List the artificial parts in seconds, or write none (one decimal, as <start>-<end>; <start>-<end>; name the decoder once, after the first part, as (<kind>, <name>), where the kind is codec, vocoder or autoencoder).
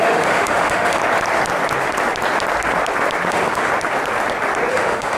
0.0-1.0 (autoencoder, DAC-VAE); 3.3-3.7; 4.7-5.2